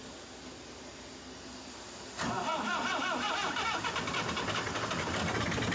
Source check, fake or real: real